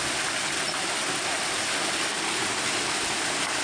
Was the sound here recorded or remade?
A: recorded